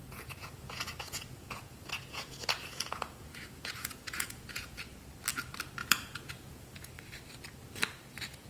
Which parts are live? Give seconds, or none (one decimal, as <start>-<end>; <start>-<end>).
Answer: 4.8-5.8; 6.9-8.5